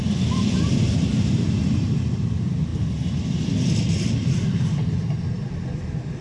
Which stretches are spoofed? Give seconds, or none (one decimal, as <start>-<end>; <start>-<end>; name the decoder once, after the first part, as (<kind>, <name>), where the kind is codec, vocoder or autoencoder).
none